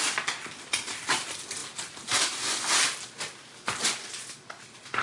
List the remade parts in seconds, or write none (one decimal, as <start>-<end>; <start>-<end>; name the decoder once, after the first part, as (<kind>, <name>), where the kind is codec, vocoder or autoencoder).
none